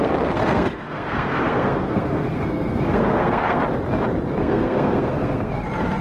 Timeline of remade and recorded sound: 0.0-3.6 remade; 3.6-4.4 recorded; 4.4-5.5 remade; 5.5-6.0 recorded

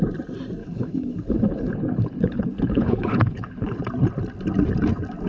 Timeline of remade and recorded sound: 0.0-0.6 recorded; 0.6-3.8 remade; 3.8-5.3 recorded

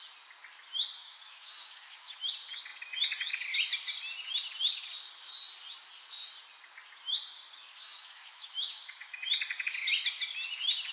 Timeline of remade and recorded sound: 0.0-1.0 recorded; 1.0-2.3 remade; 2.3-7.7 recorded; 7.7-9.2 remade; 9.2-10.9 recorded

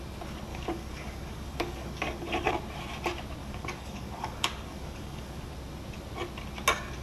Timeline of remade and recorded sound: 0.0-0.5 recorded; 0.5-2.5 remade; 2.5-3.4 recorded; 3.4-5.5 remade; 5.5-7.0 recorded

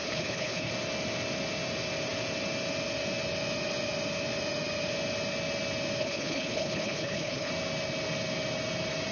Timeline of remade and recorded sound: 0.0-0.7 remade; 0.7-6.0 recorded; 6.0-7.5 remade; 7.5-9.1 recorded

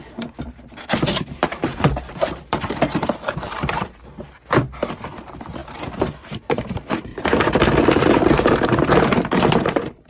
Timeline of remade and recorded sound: 0.0-7.1 remade; 7.1-7.9 recorded; 7.9-10.1 remade

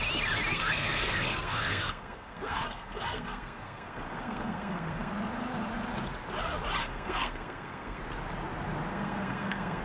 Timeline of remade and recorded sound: 0.0-0.5 recorded; 0.5-5.1 remade; 5.1-6.8 recorded; 6.8-8.0 remade; 8.0-8.9 recorded; 8.9-9.8 remade